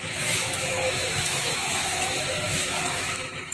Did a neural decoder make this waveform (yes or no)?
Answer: yes